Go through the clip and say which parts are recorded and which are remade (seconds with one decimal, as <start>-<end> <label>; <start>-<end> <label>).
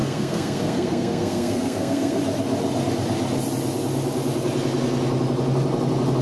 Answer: 0.0-2.2 remade; 2.2-6.2 recorded